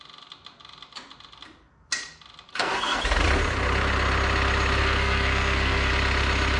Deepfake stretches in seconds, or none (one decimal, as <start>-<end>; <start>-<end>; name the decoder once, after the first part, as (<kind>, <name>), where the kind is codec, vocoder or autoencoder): 2.5-3.0 (codec, SNAC); 4.8-5.9